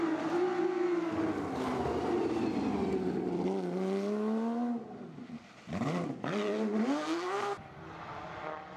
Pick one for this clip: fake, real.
real